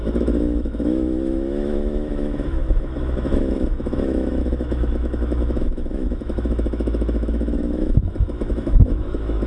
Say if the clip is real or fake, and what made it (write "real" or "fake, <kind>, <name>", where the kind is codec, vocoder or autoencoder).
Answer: fake, autoencoder, DAC-VAE